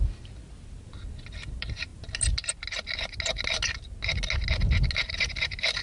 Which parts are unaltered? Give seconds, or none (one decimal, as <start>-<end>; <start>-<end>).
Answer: 0.0-5.8